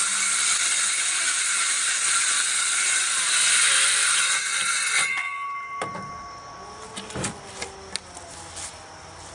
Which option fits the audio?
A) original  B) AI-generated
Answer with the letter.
A